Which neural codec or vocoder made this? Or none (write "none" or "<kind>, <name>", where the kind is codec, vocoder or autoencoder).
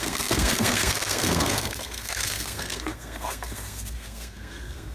codec, SNAC